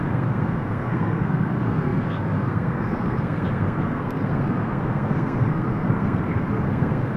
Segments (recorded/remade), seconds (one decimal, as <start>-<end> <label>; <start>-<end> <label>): 0.0-7.2 remade

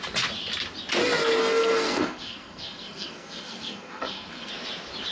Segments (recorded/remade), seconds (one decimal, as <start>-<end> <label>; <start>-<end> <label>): 0.0-1.4 recorded; 1.4-4.5 remade; 4.5-5.1 recorded

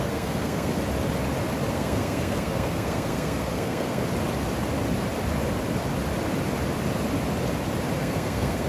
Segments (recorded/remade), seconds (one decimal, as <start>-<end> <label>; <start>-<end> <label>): 0.0-0.7 remade; 0.7-1.7 recorded; 1.7-4.0 remade; 4.0-8.0 recorded; 8.0-8.7 remade

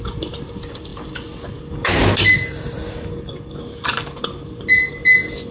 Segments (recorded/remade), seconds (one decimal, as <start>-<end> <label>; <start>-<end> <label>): 0.0-5.5 recorded

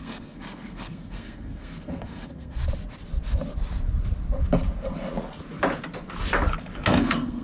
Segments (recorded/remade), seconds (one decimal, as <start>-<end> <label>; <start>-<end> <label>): 0.0-2.6 remade; 2.6-7.0 recorded; 7.0-7.4 remade

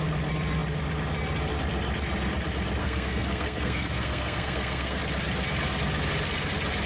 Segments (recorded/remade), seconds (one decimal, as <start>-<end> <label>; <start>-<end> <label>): 0.0-2.8 recorded; 2.8-5.0 remade; 5.0-6.9 recorded